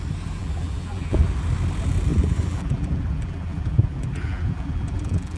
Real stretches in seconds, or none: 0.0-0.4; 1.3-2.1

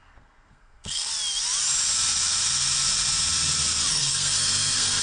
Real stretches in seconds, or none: 1.1-3.9

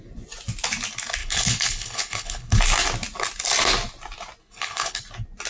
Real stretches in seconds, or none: 0.0-1.2; 2.6-4.4; 5.0-5.5

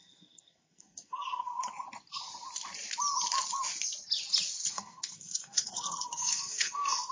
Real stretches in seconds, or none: 1.5-4.7

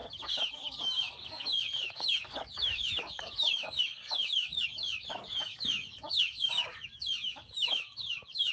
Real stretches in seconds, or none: none

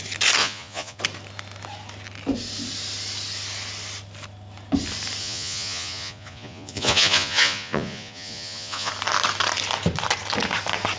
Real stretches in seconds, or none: 0.0-0.4; 1.0-5.2; 8.9-11.0

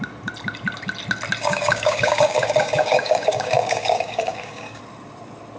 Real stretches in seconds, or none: 0.0-1.4; 4.8-5.6

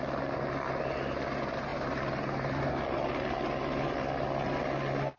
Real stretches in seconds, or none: 0.0-1.7; 2.6-5.2